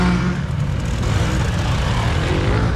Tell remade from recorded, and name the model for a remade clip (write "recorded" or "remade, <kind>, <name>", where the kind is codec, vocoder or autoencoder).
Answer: recorded